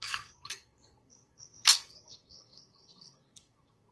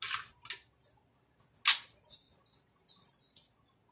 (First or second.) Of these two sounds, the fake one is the first